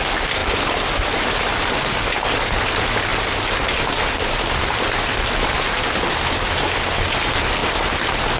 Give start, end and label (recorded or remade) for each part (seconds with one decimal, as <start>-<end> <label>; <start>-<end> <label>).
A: 0.0-8.4 recorded